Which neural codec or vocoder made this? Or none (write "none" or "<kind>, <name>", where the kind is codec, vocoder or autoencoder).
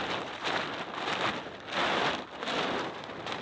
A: none